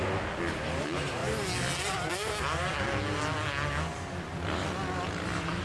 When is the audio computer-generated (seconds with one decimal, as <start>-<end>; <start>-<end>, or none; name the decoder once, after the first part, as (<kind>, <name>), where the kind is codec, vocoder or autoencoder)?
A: none